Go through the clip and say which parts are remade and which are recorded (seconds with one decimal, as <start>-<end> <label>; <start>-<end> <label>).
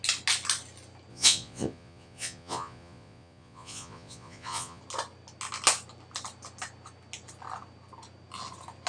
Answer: 0.0-1.1 recorded; 1.1-4.8 remade; 4.8-8.9 recorded